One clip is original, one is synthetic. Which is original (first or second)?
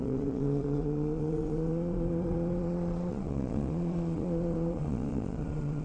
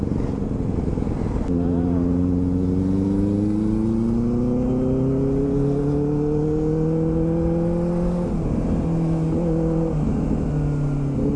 second